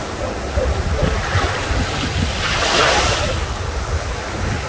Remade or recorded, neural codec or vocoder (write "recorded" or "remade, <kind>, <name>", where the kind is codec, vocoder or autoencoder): recorded